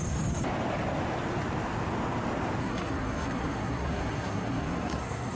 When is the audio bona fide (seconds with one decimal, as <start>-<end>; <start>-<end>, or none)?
0.0-2.6